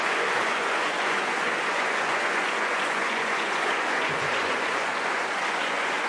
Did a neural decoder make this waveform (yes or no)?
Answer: yes